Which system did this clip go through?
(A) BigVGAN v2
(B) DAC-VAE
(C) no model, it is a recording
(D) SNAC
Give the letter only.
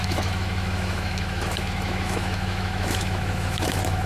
B